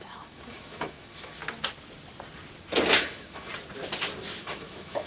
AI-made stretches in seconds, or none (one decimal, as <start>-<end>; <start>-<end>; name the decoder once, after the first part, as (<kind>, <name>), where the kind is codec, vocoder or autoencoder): 0.0-1.4 (autoencoder, DAC-VAE); 3.0-3.5; 4.4-5.1